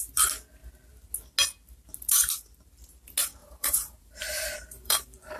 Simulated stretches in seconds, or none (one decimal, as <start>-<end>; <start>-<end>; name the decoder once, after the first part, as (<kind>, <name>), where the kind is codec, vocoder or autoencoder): 3.4-5.4 (vocoder, BigVGAN v2)